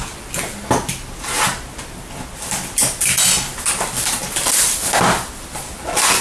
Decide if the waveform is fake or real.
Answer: real